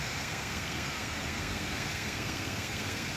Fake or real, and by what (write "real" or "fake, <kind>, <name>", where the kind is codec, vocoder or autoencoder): fake, codec, SNAC